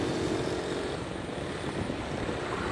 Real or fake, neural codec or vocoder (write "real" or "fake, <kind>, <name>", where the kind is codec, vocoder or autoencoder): real